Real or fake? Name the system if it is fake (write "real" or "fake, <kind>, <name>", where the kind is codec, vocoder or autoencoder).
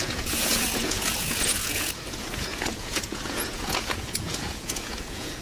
fake, vocoder, Vocos